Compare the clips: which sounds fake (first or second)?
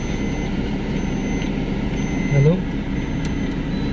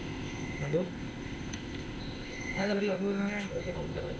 second